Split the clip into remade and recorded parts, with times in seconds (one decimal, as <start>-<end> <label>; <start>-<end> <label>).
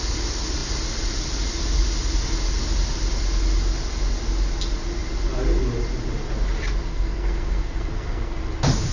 0.0-6.9 recorded; 6.9-8.4 remade; 8.4-8.9 recorded